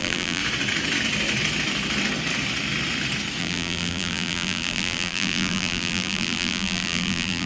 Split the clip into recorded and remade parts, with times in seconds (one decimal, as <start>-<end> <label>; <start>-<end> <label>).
0.0-0.4 remade; 0.4-3.4 recorded; 3.4-7.5 remade